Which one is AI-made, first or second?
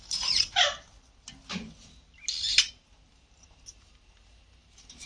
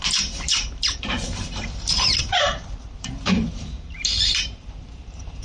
second